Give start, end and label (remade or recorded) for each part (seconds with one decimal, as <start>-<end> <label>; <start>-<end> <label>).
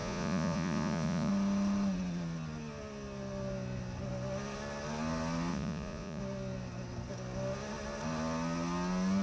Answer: 0.0-1.3 remade; 1.3-5.5 recorded; 5.5-6.2 remade; 6.2-9.2 recorded